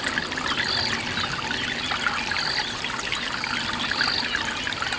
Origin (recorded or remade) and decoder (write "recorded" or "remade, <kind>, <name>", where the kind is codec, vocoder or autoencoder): recorded